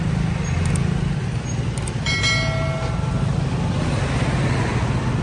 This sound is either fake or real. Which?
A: real